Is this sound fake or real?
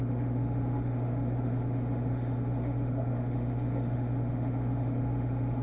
fake